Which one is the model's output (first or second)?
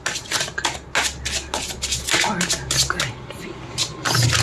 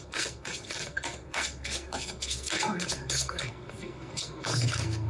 second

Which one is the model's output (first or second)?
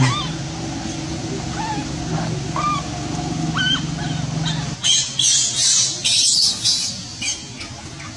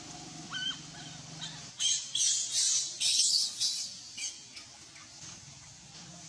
second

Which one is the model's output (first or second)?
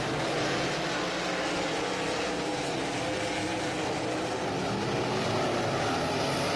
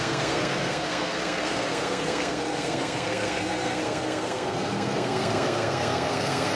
second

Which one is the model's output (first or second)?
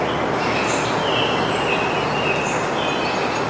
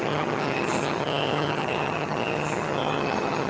second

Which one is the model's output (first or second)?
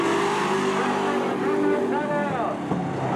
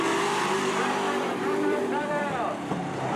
second